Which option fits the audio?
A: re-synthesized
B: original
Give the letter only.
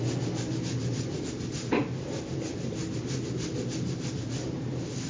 B